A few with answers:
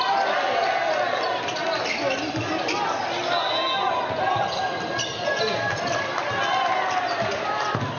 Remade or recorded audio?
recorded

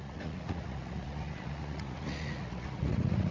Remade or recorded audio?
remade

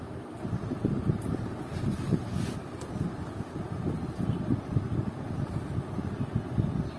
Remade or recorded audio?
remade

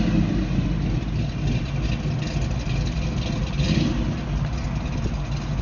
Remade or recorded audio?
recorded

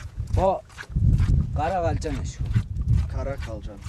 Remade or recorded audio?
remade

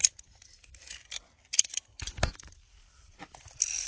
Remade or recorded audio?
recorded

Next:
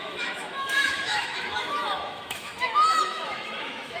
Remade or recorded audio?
remade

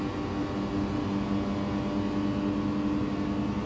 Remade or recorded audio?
recorded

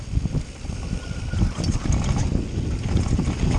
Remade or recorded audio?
recorded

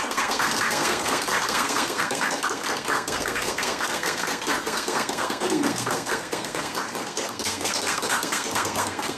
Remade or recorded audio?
remade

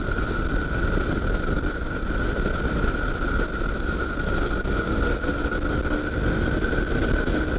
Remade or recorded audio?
recorded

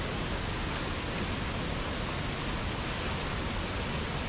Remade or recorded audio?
recorded